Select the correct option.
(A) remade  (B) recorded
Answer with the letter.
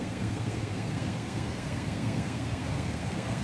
A